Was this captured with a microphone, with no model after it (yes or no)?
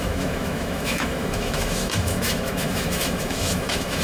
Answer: no